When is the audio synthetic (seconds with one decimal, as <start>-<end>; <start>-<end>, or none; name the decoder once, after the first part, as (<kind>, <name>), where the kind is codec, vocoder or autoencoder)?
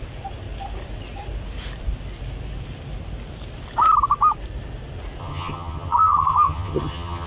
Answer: 5.2-7.3 (vocoder, HiFi-GAN)